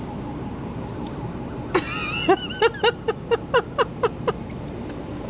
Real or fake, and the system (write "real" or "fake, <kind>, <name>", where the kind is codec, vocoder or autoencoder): real